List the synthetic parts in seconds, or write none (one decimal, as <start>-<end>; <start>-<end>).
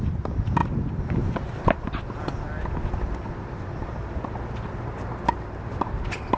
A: none